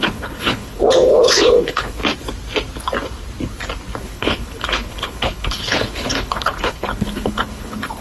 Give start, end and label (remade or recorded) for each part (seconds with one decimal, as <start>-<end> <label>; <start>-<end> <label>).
0.0-2.0 remade; 2.0-4.0 recorded; 4.0-8.0 remade

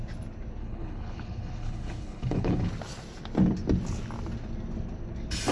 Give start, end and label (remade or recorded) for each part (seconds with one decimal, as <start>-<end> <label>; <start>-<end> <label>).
0.0-0.6 recorded; 0.6-2.7 remade; 2.7-5.5 recorded